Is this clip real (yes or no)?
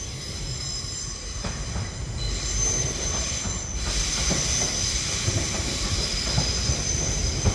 yes